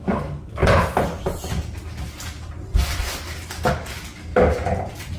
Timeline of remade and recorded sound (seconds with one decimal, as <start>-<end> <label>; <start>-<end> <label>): 0.0-0.6 remade; 0.6-3.7 recorded; 3.7-4.3 remade; 4.3-5.2 recorded